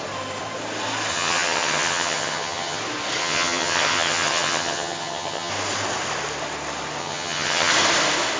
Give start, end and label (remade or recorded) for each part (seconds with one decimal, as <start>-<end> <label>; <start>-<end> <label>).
0.0-1.1 recorded; 1.1-2.8 remade; 2.8-3.2 recorded; 3.2-5.5 remade; 5.5-7.0 recorded; 7.0-7.7 remade; 7.7-8.4 recorded